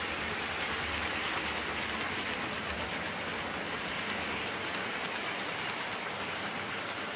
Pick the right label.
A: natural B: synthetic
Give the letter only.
A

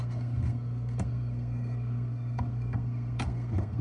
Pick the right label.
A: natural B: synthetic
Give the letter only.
B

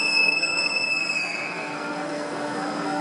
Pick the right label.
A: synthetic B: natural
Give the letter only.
A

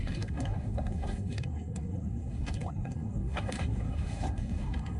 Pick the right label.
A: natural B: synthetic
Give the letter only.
B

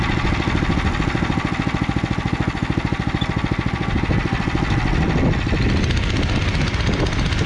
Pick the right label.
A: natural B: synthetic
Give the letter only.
A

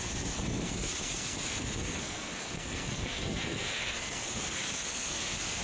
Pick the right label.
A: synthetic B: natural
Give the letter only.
A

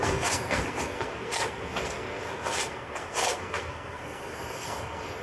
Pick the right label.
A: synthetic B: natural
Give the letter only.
A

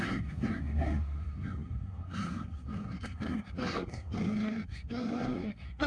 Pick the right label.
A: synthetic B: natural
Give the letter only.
A